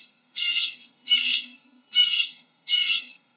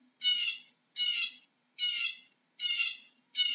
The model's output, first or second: first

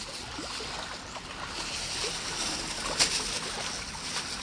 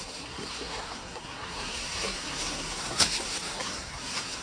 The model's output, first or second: second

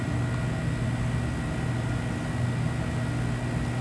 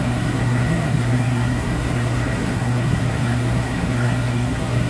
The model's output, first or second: second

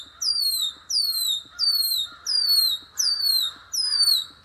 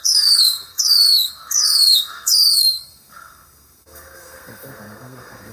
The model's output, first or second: second